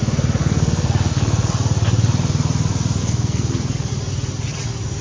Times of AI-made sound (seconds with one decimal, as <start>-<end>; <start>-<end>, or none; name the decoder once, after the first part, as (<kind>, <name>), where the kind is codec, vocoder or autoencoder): 0.4-1.5 (codec, SNAC); 3.0-3.9